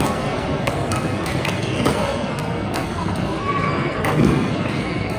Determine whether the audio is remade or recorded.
remade